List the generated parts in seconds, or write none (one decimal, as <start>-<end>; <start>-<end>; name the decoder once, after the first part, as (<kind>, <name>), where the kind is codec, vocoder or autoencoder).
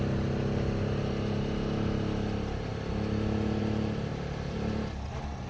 none